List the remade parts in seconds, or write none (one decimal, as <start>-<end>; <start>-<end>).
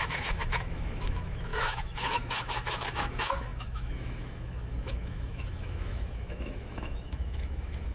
0.0-7.9